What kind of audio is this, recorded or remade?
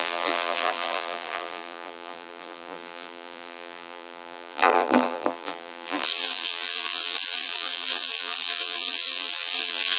remade